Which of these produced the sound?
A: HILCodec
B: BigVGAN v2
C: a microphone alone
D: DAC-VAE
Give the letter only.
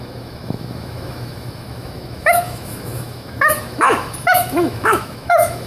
D